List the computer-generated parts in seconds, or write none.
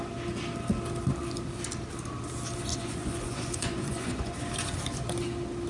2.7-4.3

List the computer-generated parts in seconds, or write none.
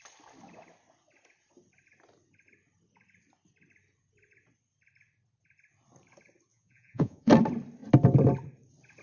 6.5-7.3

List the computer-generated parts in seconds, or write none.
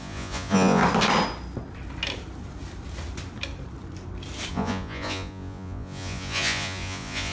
0.0-0.8; 4.5-7.3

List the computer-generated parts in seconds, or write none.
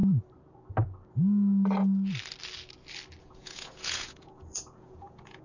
3.2-5.4